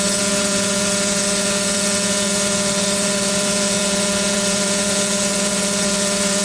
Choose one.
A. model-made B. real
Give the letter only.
A